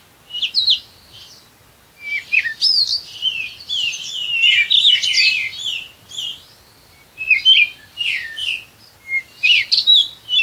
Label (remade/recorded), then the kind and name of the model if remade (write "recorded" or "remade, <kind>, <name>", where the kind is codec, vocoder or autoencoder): recorded